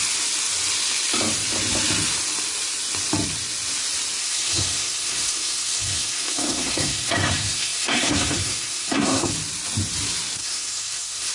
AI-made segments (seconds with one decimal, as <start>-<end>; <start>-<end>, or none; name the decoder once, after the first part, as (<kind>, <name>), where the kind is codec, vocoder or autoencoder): 4.2-9.3 (codec, SNAC); 10.4-11.3